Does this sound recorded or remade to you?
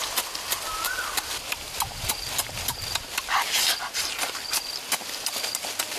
remade